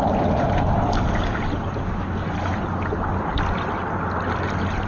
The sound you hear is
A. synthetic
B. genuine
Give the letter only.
B